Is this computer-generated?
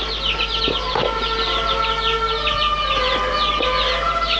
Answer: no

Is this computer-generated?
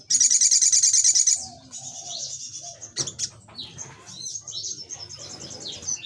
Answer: no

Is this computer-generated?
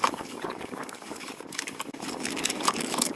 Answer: yes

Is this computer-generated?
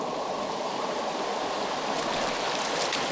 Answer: no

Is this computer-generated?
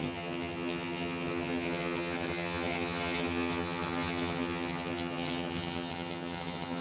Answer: yes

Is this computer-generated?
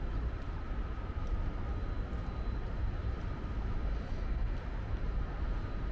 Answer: yes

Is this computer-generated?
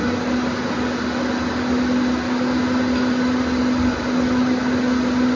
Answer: no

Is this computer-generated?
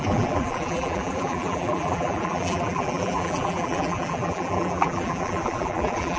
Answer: yes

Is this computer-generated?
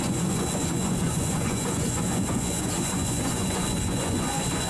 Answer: yes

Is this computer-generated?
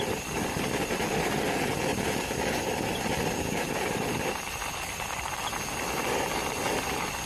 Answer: no